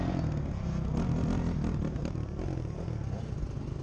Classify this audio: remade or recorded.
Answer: recorded